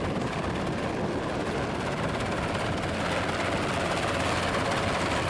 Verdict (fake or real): real